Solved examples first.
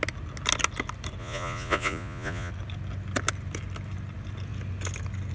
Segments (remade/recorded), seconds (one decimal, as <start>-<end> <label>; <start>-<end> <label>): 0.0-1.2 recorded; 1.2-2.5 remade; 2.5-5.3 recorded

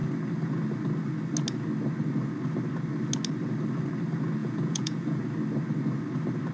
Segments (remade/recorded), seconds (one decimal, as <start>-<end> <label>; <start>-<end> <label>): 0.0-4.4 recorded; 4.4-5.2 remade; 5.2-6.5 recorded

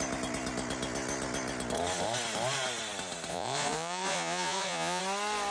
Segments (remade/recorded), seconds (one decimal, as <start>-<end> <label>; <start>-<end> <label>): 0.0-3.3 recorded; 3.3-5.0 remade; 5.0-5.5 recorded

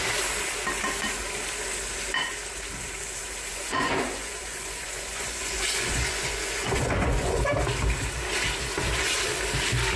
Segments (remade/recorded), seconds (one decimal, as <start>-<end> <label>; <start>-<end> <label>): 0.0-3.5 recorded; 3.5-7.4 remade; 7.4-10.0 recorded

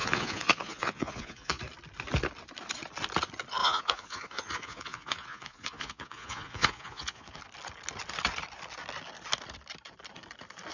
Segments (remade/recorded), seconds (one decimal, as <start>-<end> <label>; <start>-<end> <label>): 0.0-1.6 remade; 1.6-3.6 recorded; 3.6-7.4 remade; 7.4-10.7 recorded